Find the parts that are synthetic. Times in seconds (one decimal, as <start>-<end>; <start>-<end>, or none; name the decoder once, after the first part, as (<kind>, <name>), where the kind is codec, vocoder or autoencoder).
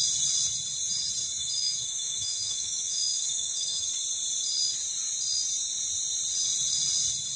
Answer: 1.4-3.9 (autoencoder, DAC-VAE)